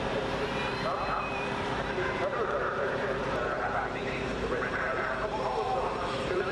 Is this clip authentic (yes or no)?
no